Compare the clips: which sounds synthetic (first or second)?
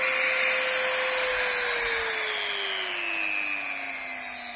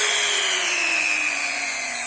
second